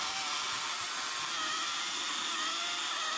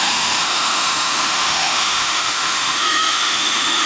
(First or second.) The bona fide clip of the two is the first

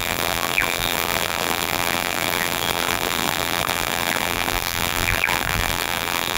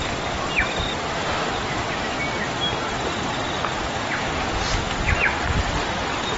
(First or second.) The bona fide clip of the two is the second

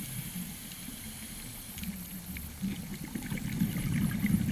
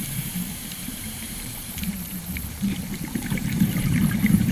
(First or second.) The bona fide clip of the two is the first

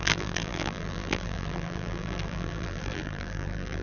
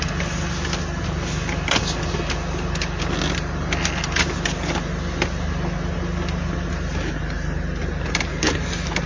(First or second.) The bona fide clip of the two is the second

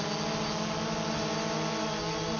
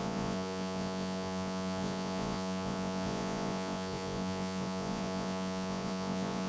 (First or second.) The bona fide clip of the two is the first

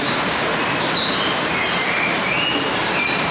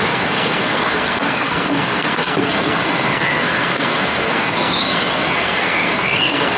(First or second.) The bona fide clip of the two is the first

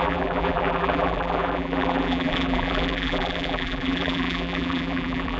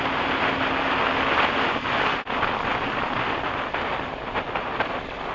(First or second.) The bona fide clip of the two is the second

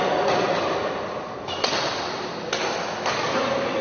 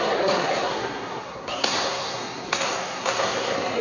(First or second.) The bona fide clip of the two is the first